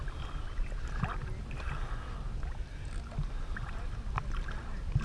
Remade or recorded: recorded